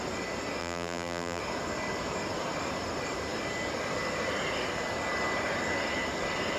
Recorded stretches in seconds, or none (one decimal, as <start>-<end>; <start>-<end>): 0.0-0.6; 1.4-6.6